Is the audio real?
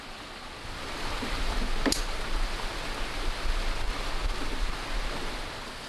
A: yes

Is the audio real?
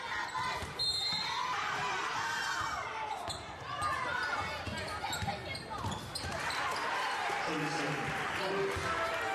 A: yes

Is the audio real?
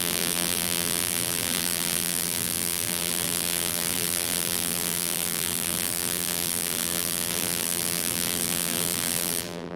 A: no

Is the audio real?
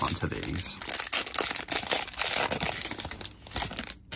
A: yes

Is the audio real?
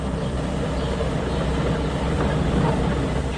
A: no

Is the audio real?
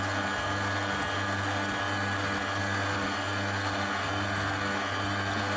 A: yes